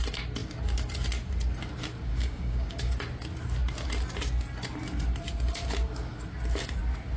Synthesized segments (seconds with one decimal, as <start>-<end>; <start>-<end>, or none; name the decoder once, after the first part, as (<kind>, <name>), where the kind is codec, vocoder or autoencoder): 2.1-2.9 (codec, DAC)